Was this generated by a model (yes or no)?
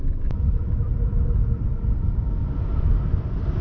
no